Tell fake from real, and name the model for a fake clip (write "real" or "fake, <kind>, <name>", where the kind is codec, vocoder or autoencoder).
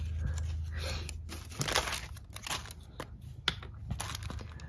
real